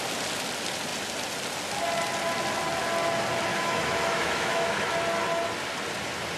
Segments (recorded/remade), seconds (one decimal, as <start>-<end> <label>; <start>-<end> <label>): 0.0-3.5 recorded; 3.5-4.9 remade; 4.9-6.4 recorded